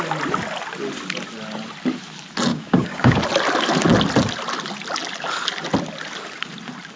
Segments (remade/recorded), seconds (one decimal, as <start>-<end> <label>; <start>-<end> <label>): 0.0-2.5 recorded; 2.5-3.2 remade; 3.2-7.0 recorded